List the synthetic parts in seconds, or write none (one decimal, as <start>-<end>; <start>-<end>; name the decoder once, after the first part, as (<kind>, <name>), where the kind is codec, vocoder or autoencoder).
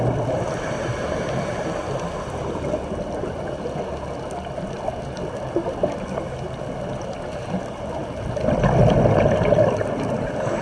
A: none